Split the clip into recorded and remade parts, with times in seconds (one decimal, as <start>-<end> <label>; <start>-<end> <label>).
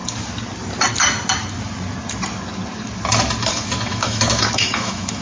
0.0-3.4 recorded; 3.4-5.2 remade